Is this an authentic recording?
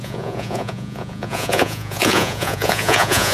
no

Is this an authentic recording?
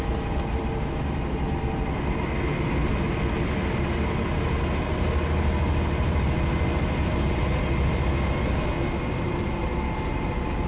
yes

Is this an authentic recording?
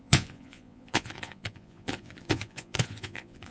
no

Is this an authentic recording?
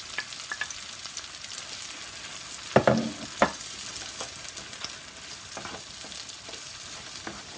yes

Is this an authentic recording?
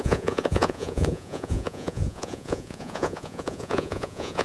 no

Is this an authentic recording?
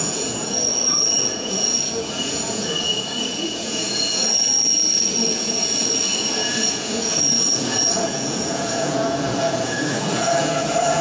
no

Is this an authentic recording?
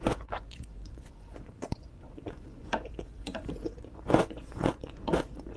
no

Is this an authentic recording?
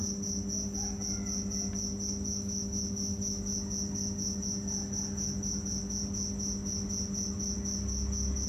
yes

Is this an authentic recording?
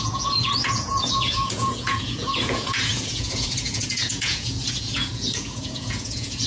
no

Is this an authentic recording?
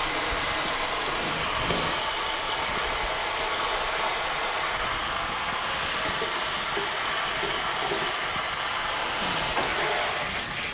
yes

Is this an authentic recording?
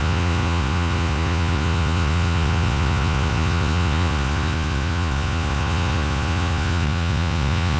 no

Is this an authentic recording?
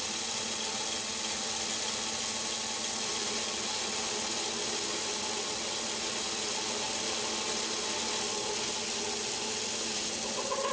yes